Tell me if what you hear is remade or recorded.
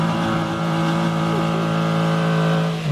remade